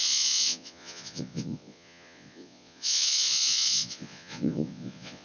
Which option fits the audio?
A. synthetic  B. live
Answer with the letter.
A